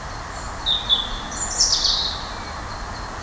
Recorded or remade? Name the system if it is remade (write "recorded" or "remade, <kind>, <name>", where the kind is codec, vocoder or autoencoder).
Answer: recorded